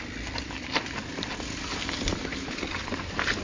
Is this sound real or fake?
real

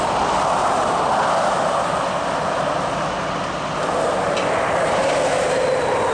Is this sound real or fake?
real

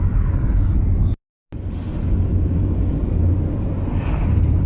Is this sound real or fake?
real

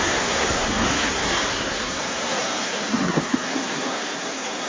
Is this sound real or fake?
fake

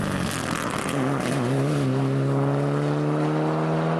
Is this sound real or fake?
real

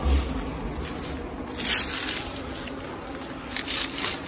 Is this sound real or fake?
real